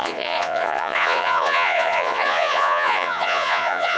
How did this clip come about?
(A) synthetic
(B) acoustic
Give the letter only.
A